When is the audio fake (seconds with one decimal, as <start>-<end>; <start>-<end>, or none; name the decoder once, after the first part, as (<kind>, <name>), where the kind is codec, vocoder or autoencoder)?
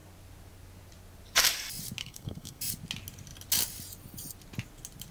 2.0-2.6 (codec, SNAC)